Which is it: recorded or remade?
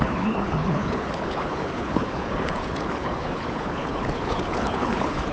remade